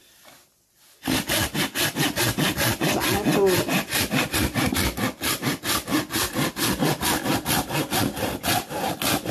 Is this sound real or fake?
real